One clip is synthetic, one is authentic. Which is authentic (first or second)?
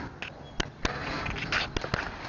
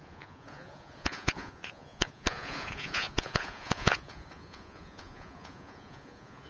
first